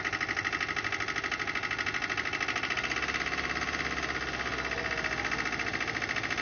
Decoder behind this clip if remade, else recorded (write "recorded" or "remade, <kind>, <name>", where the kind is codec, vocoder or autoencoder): recorded